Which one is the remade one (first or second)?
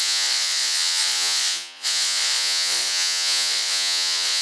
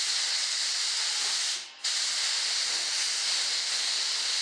first